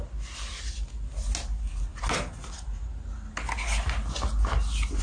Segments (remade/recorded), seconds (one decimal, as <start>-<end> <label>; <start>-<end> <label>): 0.0-5.0 recorded